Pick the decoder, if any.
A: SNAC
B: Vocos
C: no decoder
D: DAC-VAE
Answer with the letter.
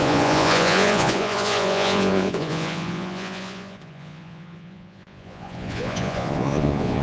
B